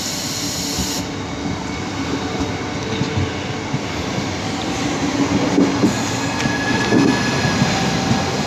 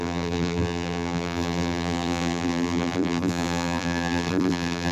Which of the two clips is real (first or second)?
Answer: first